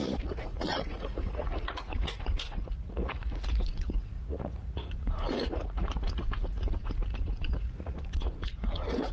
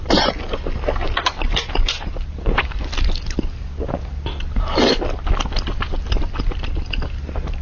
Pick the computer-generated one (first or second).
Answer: first